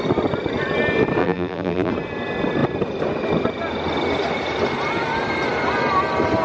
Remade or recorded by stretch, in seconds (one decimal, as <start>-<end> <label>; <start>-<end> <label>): 0.0-1.2 recorded; 1.2-1.9 remade; 1.9-6.4 recorded